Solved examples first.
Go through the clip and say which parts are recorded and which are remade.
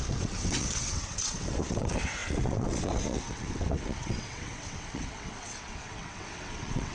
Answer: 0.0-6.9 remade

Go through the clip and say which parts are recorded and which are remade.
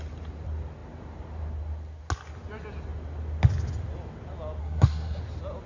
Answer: 0.0-4.6 recorded; 4.6-5.2 remade; 5.2-5.7 recorded